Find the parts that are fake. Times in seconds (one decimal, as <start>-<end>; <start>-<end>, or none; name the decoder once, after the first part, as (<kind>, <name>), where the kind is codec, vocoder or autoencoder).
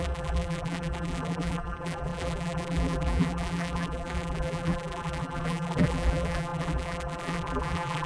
0.0-8.1 (vocoder, BigVGAN v2)